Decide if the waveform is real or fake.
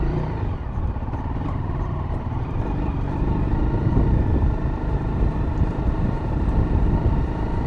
fake